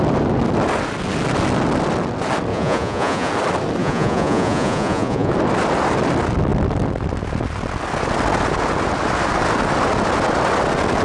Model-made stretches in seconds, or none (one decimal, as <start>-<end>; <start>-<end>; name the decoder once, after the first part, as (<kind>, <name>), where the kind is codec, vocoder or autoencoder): 2.5-3.3 (vocoder, Vocos); 3.8-5.3